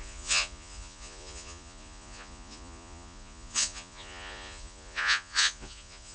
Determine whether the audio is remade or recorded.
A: remade